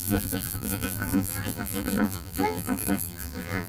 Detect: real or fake fake